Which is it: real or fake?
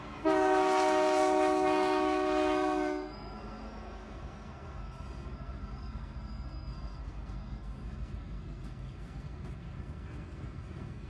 fake